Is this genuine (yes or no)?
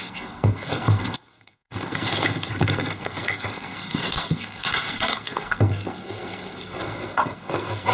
no